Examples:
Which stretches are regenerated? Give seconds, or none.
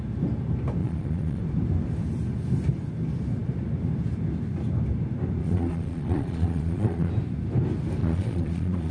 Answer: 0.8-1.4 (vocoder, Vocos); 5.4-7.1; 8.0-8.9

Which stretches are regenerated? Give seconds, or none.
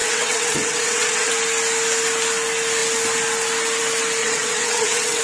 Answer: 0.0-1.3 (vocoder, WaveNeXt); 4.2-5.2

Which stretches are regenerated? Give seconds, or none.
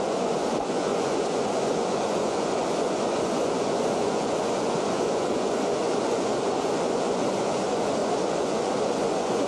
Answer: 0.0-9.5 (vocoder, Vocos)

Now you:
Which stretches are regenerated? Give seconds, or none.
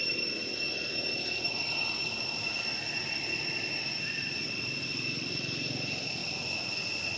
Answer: 0.0-2.5 (vocoder, BigVGAN v2); 3.1-6.2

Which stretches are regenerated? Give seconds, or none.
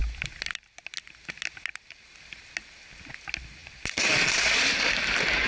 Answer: none